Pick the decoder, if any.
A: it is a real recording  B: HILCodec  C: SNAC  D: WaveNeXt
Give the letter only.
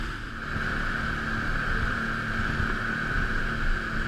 A